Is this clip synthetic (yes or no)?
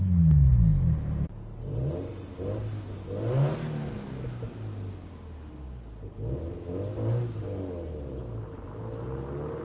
no